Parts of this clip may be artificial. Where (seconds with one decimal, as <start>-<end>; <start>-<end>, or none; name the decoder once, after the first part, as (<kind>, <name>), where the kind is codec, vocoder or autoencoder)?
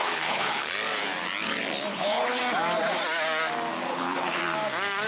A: 0.0-0.7 (codec, HILCodec); 1.9-2.4; 3.8-4.4